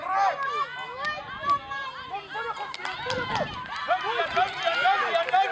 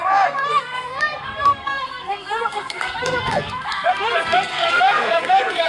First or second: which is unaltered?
first